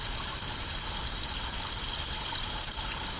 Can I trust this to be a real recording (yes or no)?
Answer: yes